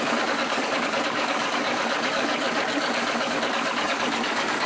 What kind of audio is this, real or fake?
fake